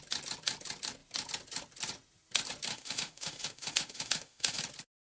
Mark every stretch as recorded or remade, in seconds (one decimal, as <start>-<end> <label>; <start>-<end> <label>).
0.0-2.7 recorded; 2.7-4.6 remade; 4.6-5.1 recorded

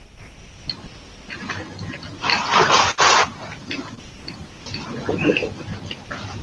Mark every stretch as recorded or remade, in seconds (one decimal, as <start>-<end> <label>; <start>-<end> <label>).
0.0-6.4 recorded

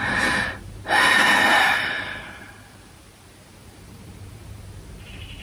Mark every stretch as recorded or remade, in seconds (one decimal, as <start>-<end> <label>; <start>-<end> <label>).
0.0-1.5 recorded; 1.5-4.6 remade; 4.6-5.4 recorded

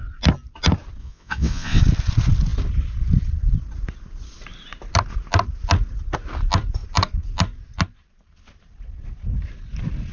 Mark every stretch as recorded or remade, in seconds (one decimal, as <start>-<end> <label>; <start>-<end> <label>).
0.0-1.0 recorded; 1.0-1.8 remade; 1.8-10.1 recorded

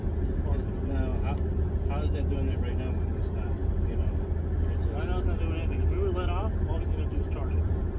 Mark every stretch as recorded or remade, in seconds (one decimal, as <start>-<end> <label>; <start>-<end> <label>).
0.0-8.0 recorded

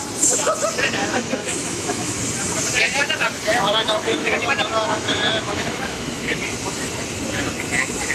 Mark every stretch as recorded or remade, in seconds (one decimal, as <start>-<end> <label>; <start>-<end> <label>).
0.0-1.0 recorded; 1.0-2.2 remade; 2.2-4.1 recorded; 4.1-6.4 remade; 6.4-8.1 recorded